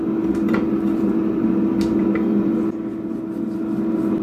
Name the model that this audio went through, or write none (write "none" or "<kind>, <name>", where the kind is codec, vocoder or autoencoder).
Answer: none